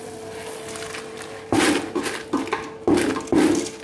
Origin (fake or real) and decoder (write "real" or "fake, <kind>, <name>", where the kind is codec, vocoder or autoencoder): real